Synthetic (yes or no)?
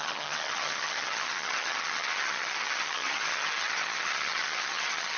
yes